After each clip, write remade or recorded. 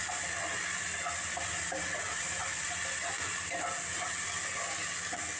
recorded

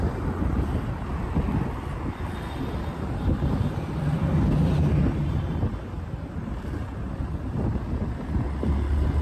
recorded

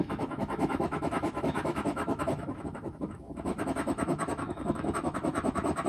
remade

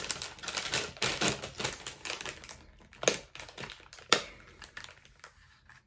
recorded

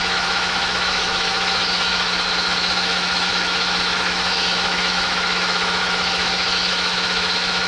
remade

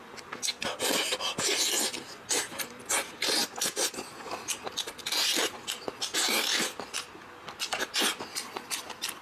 recorded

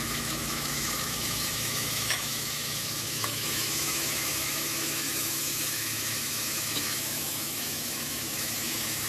remade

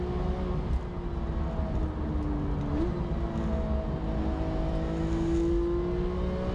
recorded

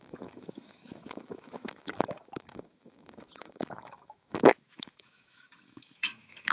remade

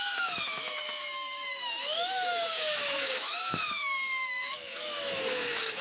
remade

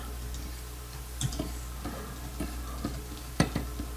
recorded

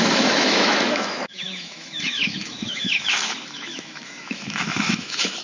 remade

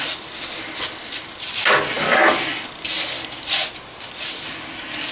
recorded